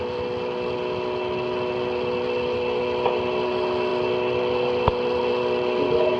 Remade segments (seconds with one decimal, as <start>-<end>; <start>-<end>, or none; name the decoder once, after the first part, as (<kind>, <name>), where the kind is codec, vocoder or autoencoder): none